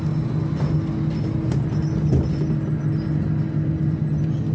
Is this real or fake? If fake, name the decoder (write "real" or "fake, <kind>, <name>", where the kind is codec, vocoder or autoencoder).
real